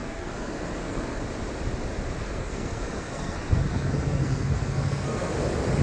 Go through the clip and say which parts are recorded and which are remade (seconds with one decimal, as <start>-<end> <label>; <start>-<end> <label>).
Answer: 0.0-1.2 remade; 1.2-2.2 recorded; 2.2-5.3 remade; 5.3-5.8 recorded